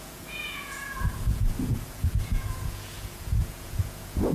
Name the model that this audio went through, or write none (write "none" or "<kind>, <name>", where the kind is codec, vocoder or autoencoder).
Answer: vocoder, Vocos